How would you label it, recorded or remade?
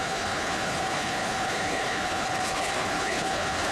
remade